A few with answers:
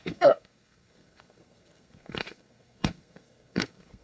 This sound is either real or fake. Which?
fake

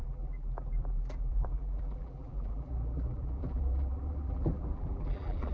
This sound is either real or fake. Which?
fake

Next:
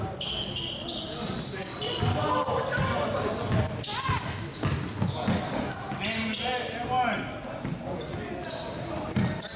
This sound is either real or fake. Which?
real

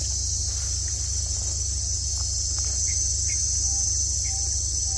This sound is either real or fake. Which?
real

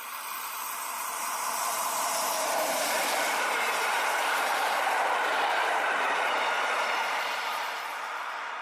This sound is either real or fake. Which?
fake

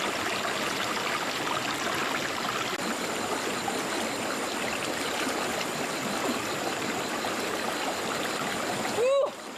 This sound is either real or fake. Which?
real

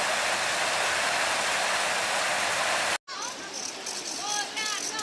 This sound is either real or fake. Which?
real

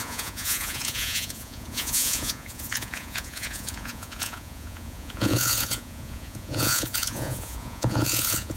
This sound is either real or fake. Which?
fake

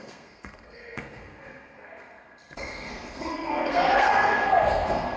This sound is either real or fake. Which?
fake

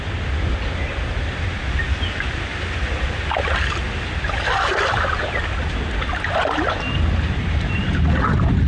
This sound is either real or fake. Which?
real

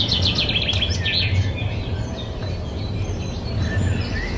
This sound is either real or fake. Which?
real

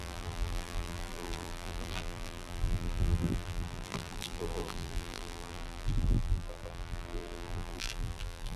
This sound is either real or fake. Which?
fake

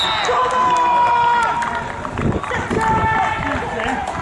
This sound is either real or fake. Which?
real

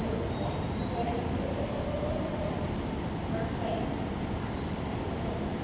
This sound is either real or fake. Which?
real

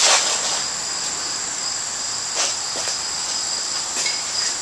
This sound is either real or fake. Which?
real